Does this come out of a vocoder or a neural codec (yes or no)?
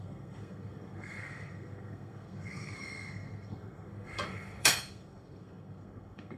yes